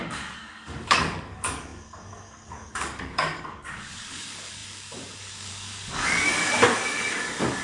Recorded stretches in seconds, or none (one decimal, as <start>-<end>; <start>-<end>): none